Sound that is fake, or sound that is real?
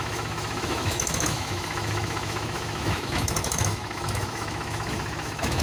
fake